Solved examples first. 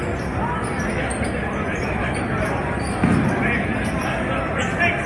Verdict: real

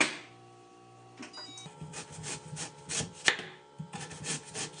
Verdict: real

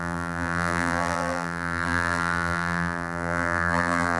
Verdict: fake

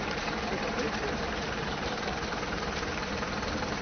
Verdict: fake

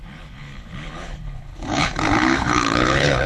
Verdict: fake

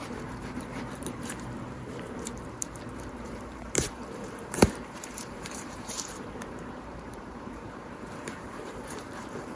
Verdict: fake